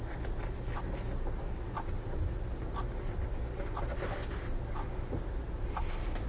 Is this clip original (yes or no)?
yes